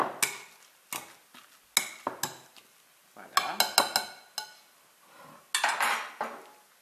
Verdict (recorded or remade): recorded